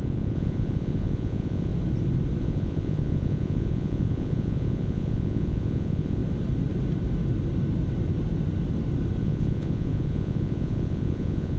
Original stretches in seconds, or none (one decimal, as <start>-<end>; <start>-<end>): 1.7-2.4; 6.2-9.2